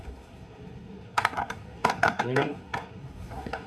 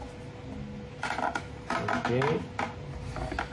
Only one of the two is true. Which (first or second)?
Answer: second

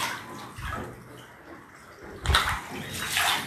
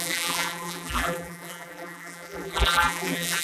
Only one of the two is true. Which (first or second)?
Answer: first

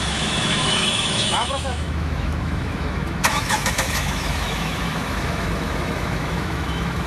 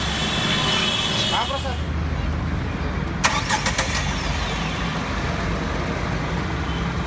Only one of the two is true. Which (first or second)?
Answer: second